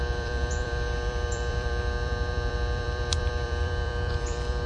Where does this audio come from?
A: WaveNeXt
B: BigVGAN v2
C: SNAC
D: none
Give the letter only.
B